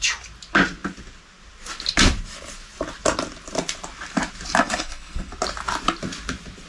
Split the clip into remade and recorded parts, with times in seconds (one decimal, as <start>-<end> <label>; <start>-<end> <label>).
0.0-4.6 recorded; 4.6-5.3 remade; 5.3-6.7 recorded